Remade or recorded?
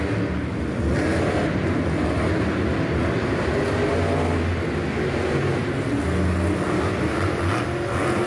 recorded